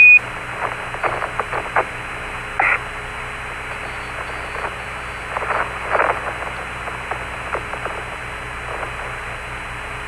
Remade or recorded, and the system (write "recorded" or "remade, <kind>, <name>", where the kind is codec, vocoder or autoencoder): recorded